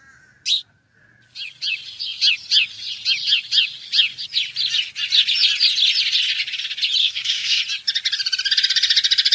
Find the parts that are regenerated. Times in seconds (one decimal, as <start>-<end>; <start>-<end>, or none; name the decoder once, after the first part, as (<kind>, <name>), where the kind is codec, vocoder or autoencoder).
7.0-7.6 (codec, SNAC)